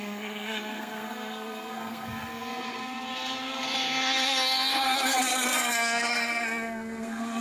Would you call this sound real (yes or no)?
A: no